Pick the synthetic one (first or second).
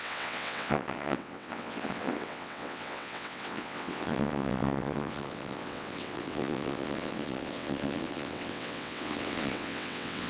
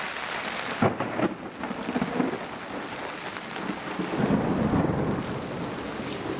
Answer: first